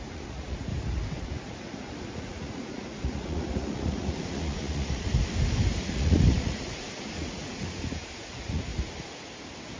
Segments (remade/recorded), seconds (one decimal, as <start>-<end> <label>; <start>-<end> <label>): 0.0-0.7 remade; 0.7-1.2 recorded; 1.2-5.2 remade; 5.2-5.8 recorded; 5.8-8.7 remade; 8.7-9.8 recorded